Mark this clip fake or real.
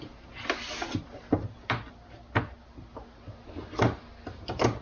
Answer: real